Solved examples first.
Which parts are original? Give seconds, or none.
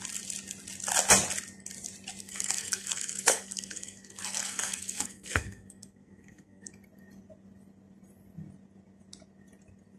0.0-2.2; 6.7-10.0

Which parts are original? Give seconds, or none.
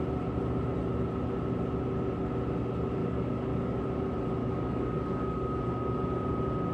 0.0-3.0; 3.8-4.4; 5.6-6.7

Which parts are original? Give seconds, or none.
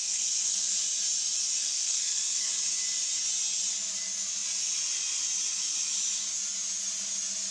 0.8-1.6; 2.5-7.5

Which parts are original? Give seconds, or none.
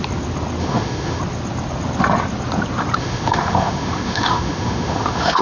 0.0-0.6; 1.2-3.0